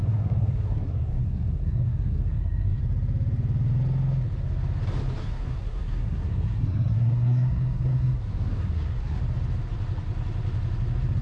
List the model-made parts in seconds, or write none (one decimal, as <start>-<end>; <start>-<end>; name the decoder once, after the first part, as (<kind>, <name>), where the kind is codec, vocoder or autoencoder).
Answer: 0.0-2.8 (codec, SNAC); 5.2-9.2